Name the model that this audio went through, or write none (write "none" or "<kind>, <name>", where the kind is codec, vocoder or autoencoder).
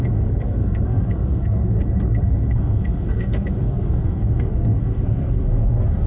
codec, SNAC